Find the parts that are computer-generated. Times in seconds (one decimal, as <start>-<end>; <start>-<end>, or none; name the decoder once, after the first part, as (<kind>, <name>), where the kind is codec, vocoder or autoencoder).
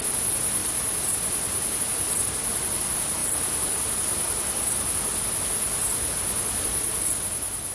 0.6-1.8 (vocoder, BigVGAN v2)